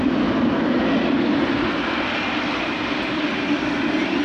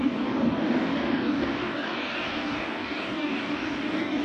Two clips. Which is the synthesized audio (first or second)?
second